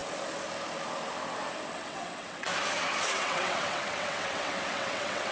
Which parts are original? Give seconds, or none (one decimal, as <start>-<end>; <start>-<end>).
0.0-1.7; 2.5-3.2